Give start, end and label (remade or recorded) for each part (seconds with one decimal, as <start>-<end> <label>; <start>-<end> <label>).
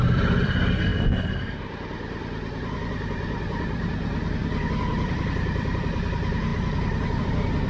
0.0-6.5 remade; 6.5-7.2 recorded; 7.2-7.7 remade